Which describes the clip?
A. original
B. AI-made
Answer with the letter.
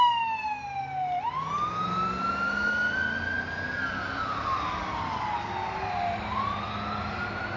A